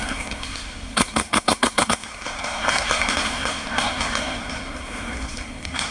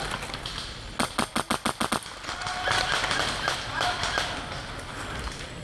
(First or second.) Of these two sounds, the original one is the second